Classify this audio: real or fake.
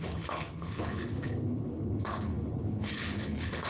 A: fake